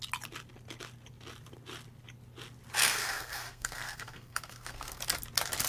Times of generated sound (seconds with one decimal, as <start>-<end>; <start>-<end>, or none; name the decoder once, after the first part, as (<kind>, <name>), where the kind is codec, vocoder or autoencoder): 2.8-5.0 (codec, SNAC)